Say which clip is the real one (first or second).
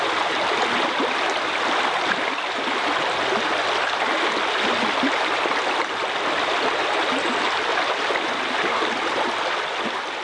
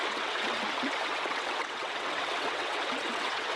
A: first